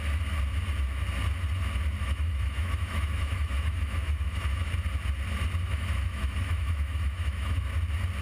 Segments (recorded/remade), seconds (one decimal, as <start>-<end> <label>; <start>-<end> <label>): 0.0-2.0 recorded; 2.0-4.7 remade; 4.7-5.6 recorded; 5.6-7.6 remade; 7.6-8.2 recorded